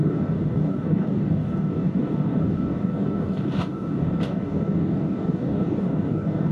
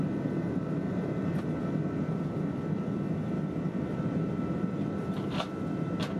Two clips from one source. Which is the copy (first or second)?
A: first